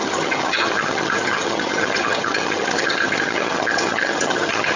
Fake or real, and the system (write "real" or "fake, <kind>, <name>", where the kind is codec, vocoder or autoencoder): fake, vocoder, HiFi-GAN